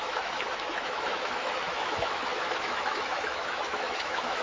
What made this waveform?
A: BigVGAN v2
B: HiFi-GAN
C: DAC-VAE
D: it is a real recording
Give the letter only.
C